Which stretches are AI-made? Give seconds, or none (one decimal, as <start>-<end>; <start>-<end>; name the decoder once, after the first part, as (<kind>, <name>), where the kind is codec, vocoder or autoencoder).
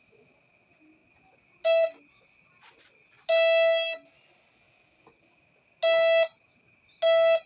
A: none